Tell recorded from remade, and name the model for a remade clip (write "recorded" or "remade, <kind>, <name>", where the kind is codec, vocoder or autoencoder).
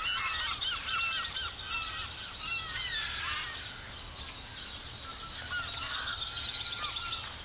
recorded